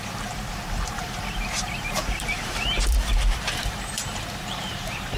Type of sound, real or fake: fake